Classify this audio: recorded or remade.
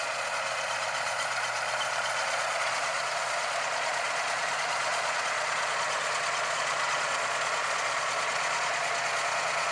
remade